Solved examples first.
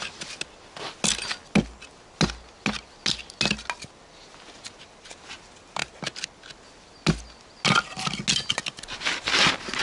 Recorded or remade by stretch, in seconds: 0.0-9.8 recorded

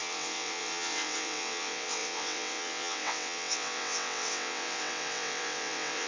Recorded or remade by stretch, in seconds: 0.0-6.1 remade

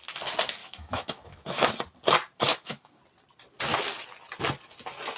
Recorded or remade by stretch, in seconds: 0.0-0.6 recorded; 0.6-1.7 remade; 1.7-2.5 recorded; 2.5-3.0 remade; 3.0-5.2 recorded

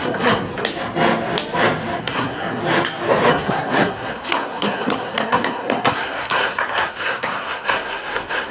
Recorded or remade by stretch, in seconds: 0.0-0.5 remade; 0.5-2.0 recorded; 2.0-2.6 remade; 2.6-3.3 recorded; 3.3-8.5 remade

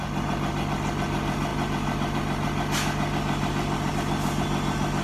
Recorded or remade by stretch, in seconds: 0.0-5.0 recorded

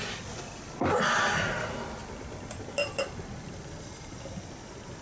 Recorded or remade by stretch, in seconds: 0.0-5.0 recorded

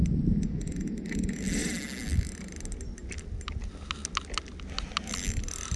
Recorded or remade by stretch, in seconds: 0.0-5.8 recorded